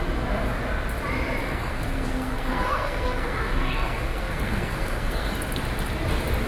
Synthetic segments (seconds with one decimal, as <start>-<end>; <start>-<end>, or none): 1.4-5.3